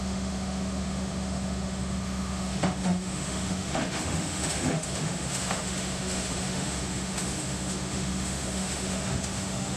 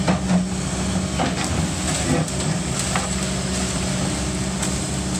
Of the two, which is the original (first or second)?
second